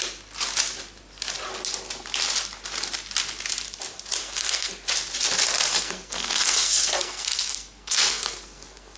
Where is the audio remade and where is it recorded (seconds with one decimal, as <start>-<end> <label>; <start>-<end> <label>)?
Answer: 0.0-4.2 recorded; 4.2-4.7 remade; 4.7-5.7 recorded; 5.7-9.0 remade